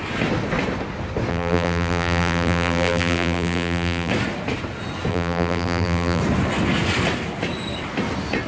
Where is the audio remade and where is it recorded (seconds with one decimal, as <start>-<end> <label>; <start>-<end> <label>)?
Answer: 0.0-1.3 recorded; 1.3-4.1 remade; 4.1-5.1 recorded; 5.1-6.2 remade; 6.2-8.5 recorded